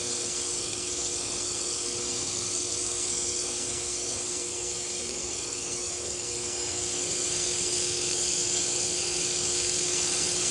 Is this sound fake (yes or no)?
yes